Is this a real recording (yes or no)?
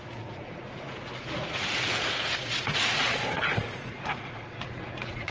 no